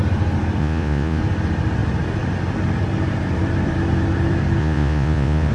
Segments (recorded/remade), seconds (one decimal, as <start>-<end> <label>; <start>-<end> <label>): 0.0-0.6 recorded; 0.6-1.2 remade; 1.2-4.6 recorded; 4.6-5.5 remade